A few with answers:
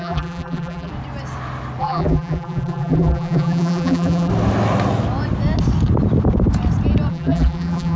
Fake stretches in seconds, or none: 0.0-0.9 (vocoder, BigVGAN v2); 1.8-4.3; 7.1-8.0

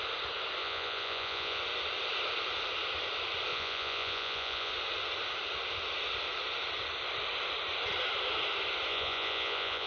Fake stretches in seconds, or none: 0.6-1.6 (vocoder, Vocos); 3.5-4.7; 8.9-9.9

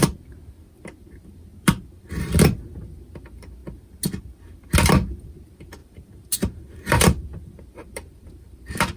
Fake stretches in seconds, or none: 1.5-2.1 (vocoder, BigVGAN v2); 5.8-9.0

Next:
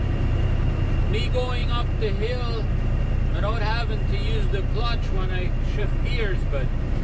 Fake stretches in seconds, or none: none